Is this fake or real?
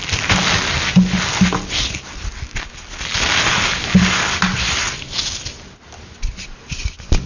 real